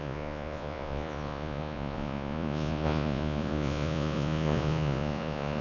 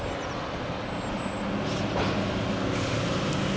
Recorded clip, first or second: second